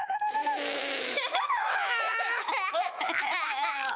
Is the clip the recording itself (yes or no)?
no